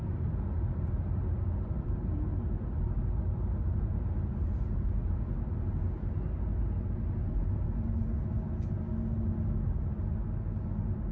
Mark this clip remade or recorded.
recorded